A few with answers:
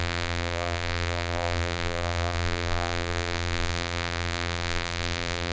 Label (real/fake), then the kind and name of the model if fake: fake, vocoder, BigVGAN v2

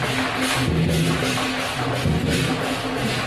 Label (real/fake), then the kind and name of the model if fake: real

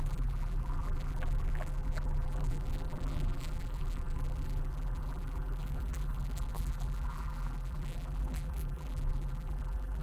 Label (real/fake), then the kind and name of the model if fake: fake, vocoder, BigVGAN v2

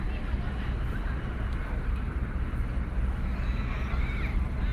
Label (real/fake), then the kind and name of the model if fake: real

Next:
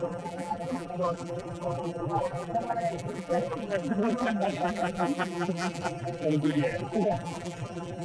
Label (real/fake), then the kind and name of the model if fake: fake, vocoder, BigVGAN v2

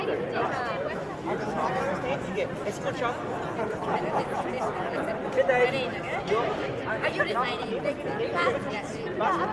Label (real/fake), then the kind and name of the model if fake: real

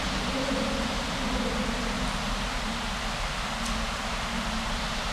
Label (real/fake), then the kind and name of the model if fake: real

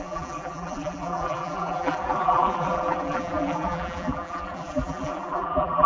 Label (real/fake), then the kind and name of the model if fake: fake, vocoder, BigVGAN v2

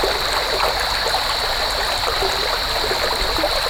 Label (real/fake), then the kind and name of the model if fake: real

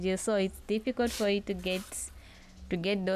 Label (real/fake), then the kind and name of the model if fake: real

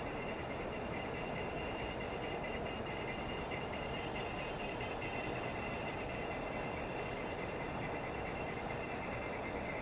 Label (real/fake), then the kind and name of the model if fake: real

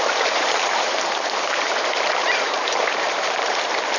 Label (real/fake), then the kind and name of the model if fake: fake, vocoder, BigVGAN v2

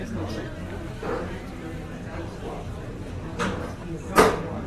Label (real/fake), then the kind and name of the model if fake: fake, vocoder, BigVGAN v2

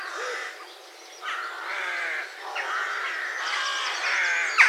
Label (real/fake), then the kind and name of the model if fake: real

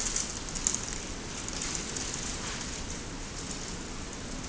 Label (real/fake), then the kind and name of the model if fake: real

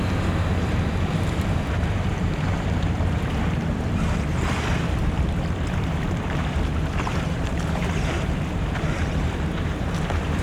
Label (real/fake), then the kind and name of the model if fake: fake, vocoder, BigVGAN v2